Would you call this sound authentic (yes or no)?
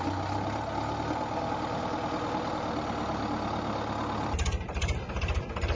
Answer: yes